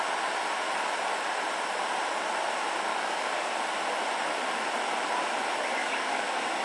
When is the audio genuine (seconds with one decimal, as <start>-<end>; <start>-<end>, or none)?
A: 0.0-2.9; 3.5-5.8